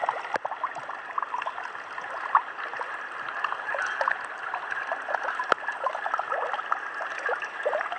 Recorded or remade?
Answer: recorded